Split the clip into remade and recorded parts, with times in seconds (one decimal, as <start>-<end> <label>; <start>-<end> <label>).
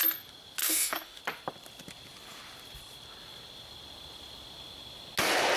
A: 0.0-0.6 recorded; 0.6-1.2 remade; 1.2-5.6 recorded